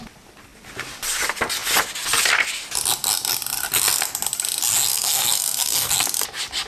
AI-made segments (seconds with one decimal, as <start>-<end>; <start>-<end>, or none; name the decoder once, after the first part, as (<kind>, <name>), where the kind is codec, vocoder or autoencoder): 4.9-5.9 (codec, SNAC)

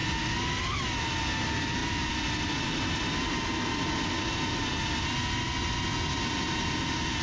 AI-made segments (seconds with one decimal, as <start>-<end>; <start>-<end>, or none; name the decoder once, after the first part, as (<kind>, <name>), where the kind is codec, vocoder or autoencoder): none

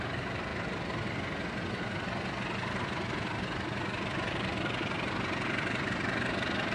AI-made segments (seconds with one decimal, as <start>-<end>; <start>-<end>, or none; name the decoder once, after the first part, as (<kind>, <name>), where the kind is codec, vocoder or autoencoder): none

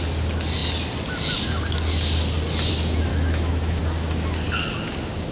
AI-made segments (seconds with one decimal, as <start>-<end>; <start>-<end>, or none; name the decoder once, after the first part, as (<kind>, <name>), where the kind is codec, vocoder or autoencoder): 3.1-3.8 (autoencoder, DAC-VAE)

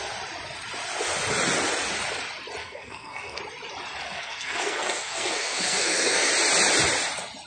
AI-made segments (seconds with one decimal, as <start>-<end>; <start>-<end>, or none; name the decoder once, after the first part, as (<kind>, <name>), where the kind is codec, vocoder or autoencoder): 2.6-3.4 (codec, SNAC); 4.0-6.3

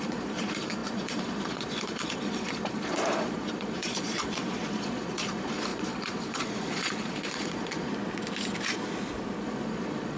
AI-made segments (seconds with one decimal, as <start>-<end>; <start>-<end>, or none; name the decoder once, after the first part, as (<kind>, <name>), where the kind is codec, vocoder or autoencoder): 0.0-7.9 (vocoder, Vocos); 9.4-10.2

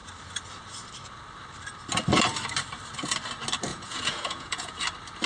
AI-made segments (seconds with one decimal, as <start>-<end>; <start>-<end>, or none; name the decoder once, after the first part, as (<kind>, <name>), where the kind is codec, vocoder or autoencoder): 3.7-4.8 (vocoder, Vocos)

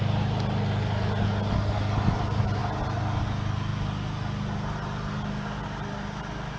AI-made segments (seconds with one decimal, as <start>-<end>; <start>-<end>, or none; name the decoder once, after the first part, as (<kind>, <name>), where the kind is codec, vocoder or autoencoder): none